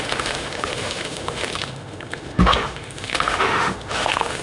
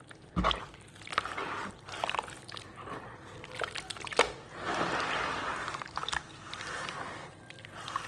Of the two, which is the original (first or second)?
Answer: second